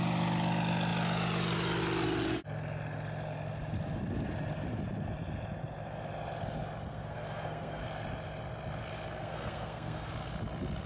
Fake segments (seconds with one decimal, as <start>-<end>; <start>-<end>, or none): 6.9-7.8; 9.2-10.1